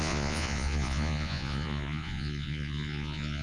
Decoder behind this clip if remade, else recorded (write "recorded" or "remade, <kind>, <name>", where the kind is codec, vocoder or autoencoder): remade, vocoder, Vocos